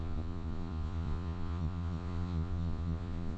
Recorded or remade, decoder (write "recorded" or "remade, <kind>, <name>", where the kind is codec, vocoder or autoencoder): remade, vocoder, Vocos